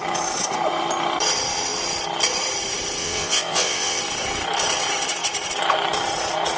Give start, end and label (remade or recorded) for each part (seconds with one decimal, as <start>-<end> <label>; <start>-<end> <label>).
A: 0.0-3.0 recorded; 3.0-4.0 remade; 4.0-6.6 recorded